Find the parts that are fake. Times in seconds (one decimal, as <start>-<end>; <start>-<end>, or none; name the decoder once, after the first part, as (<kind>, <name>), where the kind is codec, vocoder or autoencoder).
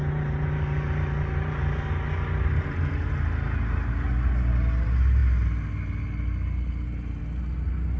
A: none